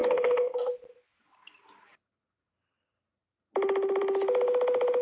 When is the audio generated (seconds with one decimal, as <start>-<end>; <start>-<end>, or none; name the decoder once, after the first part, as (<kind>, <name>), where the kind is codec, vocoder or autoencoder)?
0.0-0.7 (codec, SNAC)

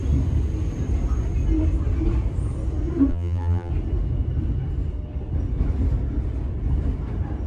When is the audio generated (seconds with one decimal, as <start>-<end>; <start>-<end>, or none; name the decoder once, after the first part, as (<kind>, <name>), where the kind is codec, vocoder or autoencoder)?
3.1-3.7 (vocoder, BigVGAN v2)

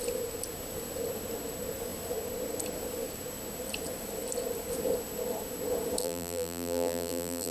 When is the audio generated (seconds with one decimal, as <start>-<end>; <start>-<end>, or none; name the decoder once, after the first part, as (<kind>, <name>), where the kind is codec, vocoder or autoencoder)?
6.0-7.5 (vocoder, BigVGAN v2)